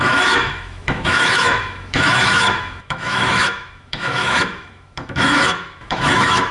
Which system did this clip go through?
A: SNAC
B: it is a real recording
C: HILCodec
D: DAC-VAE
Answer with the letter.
D